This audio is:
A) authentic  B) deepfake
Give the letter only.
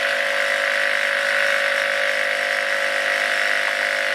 A